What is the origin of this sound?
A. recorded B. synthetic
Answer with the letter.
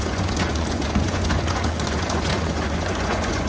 B